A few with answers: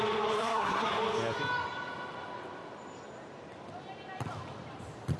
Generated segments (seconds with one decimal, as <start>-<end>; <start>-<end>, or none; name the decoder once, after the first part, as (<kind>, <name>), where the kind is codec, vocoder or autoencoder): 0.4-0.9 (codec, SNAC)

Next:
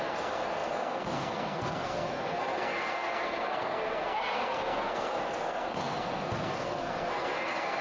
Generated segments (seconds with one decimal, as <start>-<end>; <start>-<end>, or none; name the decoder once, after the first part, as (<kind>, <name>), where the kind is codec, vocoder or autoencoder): 0.0-7.8 (codec, SNAC)

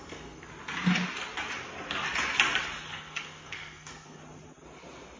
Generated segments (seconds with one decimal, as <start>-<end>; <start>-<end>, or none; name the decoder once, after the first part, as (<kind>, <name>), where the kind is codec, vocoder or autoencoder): 0.0-0.5 (codec, SNAC); 2.9-4.2

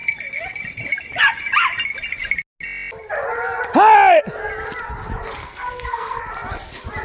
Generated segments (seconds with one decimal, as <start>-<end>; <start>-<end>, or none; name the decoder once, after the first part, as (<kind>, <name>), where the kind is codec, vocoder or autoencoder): 5.4-6.2 (codec, SNAC)

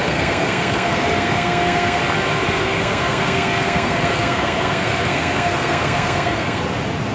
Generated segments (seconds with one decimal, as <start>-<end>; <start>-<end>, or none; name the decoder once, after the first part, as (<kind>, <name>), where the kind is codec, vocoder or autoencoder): 0.0-2.0 (codec, SNAC); 2.4-6.6

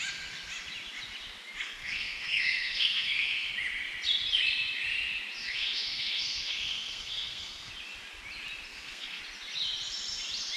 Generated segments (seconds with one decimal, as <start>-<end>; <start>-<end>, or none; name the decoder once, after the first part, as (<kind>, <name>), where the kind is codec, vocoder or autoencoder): 1.6-3.5 (codec, SNAC); 5.4-7.7; 8.7-9.2